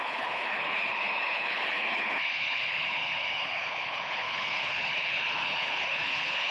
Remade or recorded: remade